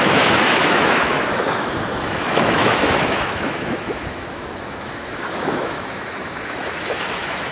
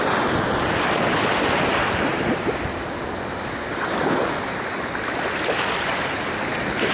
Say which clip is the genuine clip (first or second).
second